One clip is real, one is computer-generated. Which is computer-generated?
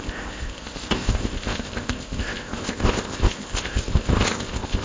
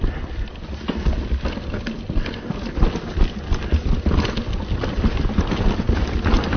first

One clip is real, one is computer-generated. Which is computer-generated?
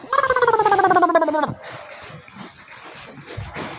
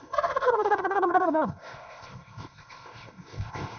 second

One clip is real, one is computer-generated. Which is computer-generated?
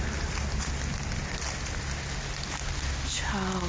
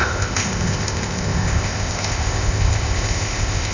second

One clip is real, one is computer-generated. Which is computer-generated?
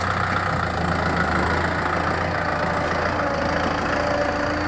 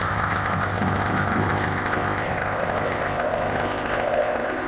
second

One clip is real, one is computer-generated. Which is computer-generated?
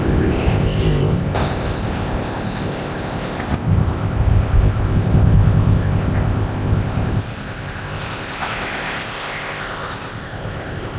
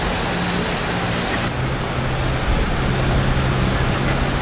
first